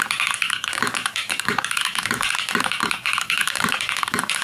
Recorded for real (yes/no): no